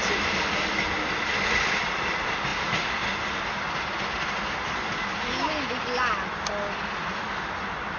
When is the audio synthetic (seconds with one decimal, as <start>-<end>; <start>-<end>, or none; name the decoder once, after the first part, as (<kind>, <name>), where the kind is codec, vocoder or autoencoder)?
none